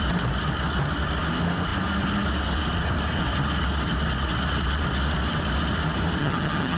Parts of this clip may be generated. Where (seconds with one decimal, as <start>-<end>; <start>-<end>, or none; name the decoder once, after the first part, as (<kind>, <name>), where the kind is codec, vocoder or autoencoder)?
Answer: 6.2-6.8 (vocoder, HiFi-GAN)